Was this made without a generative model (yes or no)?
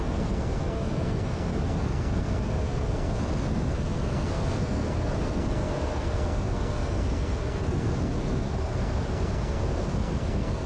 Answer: no